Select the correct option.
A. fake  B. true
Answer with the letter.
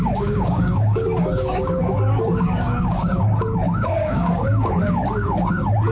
A